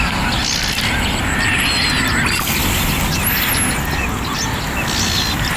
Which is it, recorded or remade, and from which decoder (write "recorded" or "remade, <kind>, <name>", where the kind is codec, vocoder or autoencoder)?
recorded